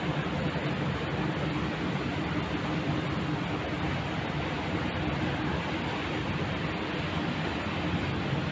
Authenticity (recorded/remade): recorded